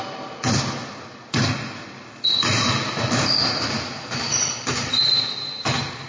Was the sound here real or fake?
real